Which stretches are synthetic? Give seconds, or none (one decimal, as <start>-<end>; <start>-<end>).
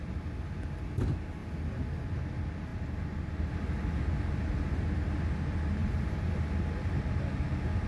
2.7-3.5; 5.8-6.3